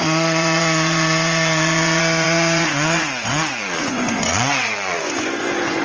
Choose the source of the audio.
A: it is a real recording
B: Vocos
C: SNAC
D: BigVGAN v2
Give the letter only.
B